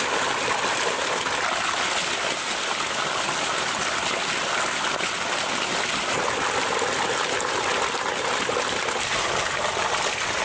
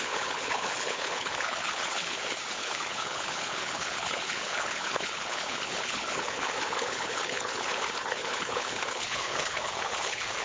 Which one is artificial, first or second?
second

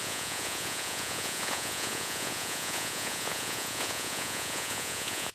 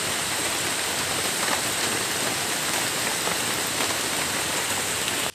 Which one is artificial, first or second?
first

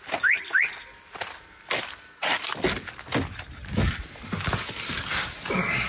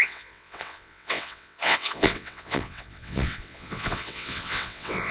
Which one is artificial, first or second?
second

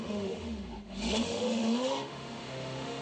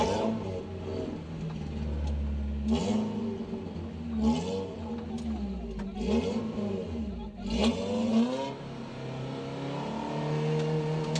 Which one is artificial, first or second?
first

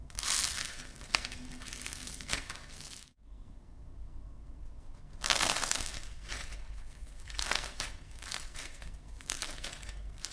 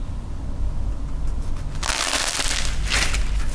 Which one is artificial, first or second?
first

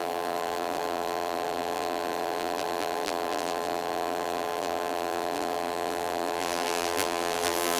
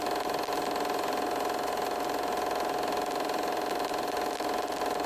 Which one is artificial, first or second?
first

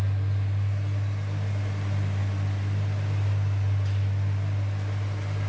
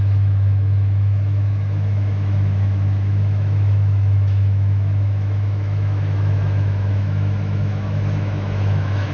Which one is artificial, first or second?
second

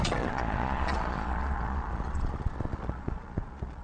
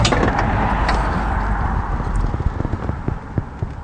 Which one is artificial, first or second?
first